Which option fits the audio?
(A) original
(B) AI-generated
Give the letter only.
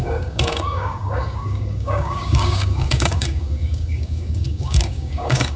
B